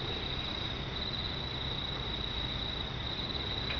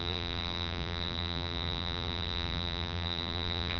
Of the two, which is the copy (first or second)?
second